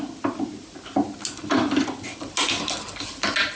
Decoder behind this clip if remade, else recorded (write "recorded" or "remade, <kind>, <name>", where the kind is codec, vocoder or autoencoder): recorded